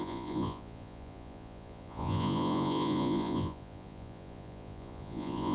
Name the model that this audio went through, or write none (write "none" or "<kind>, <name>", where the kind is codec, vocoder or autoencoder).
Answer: vocoder, Vocos